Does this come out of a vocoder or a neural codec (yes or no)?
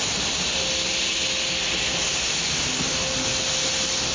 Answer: no